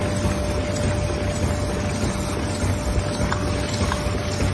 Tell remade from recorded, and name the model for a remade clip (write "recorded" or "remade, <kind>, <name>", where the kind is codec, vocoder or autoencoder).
recorded